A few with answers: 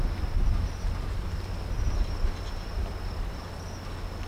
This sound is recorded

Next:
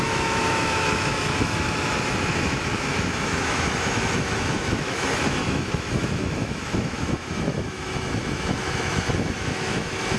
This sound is remade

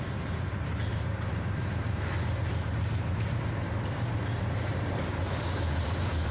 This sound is remade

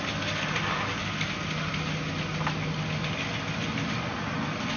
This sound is recorded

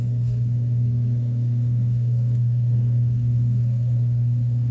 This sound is remade